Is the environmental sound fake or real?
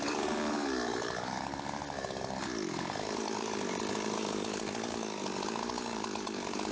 fake